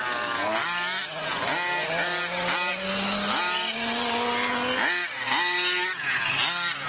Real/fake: real